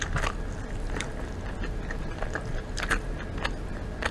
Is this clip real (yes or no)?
yes